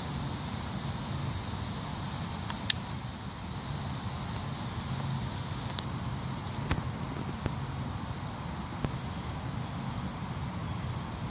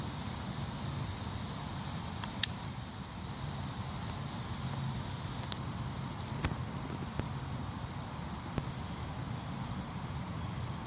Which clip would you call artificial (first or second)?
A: second